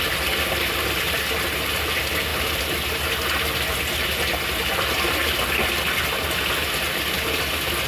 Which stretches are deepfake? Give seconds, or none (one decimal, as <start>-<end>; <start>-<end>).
0.0-2.3; 7.0-7.9